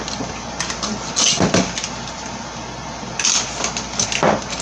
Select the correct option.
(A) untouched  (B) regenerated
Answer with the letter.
A